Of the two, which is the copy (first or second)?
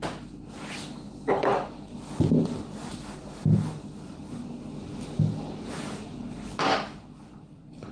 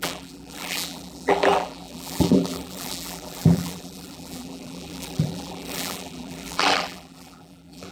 second